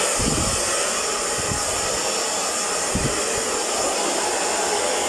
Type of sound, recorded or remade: recorded